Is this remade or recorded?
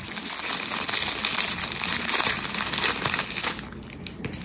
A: recorded